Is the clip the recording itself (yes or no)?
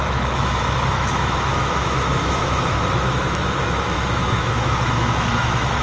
no